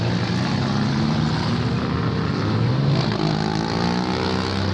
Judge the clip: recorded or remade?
recorded